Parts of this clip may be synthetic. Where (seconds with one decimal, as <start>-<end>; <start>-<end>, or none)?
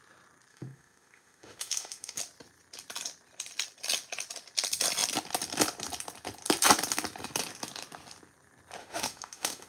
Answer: 0.5-2.2; 8.8-9.7